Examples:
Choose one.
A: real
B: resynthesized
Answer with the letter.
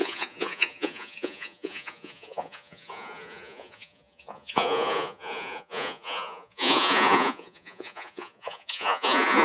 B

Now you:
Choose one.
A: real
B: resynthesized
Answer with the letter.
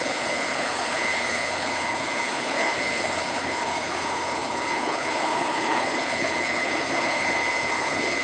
B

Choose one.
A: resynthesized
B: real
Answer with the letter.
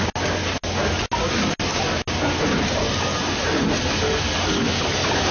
B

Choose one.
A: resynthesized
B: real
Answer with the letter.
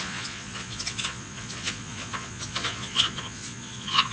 A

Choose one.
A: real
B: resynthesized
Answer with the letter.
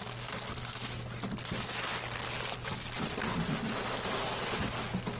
A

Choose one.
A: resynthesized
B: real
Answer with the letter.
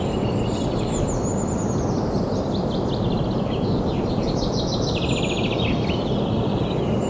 A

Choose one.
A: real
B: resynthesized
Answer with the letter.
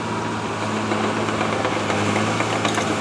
A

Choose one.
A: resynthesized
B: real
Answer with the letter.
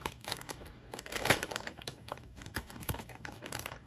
A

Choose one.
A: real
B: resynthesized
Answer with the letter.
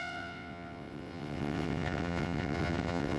B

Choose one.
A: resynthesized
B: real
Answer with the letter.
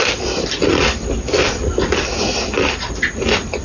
B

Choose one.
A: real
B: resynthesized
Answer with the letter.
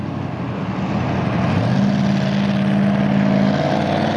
A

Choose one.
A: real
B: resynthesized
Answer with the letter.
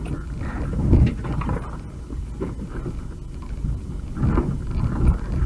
A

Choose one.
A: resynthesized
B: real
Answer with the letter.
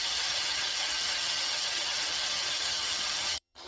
A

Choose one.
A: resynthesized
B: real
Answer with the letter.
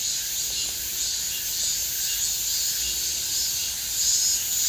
B